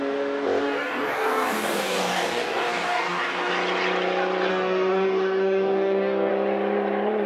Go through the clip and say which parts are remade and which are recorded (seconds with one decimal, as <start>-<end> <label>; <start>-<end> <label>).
0.0-0.6 recorded; 0.6-3.5 remade; 3.5-4.5 recorded; 4.5-6.3 remade; 6.3-7.3 recorded